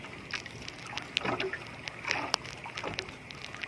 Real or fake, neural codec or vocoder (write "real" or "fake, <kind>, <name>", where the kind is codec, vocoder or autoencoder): real